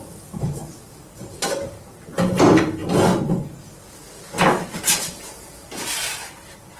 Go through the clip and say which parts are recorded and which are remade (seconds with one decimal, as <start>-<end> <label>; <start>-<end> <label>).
0.0-2.8 remade; 2.8-4.8 recorded; 4.8-6.8 remade